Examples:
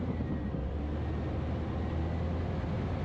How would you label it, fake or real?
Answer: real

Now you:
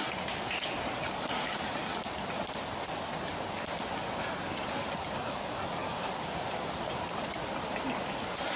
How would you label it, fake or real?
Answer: real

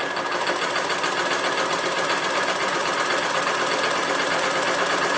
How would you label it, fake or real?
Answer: real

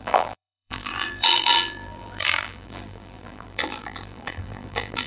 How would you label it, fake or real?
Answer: fake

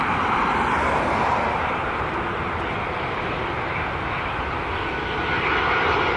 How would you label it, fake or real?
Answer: real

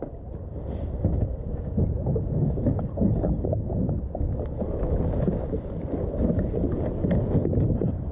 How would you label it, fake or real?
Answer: real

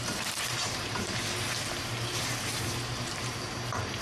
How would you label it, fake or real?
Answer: fake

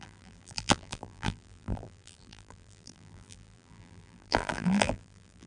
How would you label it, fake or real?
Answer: fake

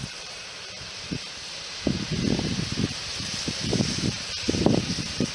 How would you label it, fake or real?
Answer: fake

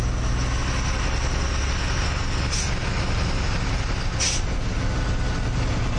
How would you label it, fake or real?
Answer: real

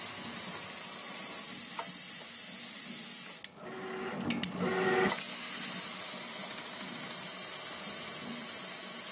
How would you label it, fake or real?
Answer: real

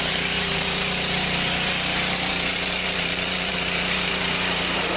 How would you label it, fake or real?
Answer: fake